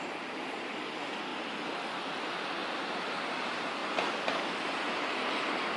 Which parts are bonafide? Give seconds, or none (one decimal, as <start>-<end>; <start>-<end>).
1.3-1.9; 2.6-3.4; 3.8-5.8